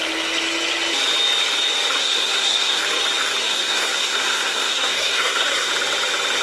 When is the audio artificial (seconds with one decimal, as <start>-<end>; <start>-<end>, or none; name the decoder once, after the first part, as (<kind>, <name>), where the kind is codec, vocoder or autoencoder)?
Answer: 2.0-2.8 (codec, SNAC); 3.4-5.7